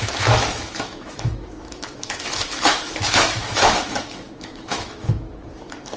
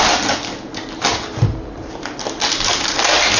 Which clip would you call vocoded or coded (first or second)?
first